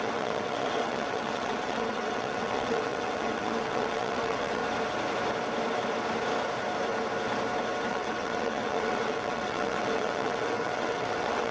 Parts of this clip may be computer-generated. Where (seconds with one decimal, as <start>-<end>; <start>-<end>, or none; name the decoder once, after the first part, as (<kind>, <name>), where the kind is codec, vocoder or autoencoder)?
0.0-4.6 (vocoder, WaveNeXt); 7.9-11.5